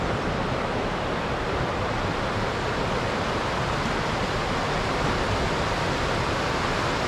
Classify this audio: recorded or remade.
recorded